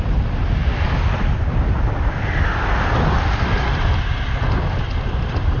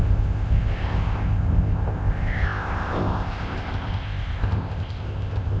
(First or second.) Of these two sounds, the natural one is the first